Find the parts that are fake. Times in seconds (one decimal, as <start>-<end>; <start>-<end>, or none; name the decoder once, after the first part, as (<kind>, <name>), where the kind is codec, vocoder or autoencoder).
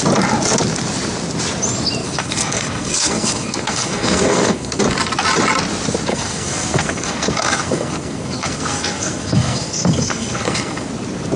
2.0-4.8 (codec, SNAC); 6.1-10.9